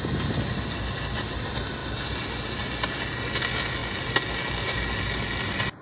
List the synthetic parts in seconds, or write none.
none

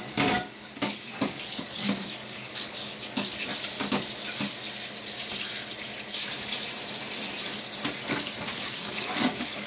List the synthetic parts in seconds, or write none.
0.0-3.5 (codec, DAC); 8.1-9.7

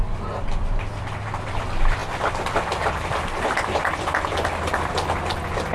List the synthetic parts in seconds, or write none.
none

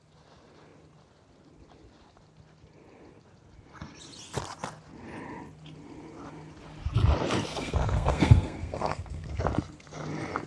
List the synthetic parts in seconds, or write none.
7.5-9.4 (codec, SNAC)

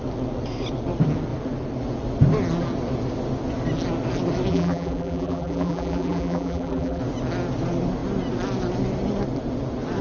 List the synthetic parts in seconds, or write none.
4.5-7.0 (vocoder, BigVGAN v2)

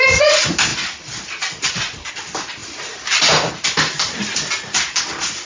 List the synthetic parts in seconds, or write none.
none